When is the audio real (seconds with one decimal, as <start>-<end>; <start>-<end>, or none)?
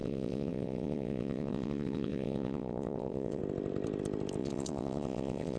3.4-4.4